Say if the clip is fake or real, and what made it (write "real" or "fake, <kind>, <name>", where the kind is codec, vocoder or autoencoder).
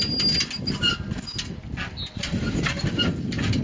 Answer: real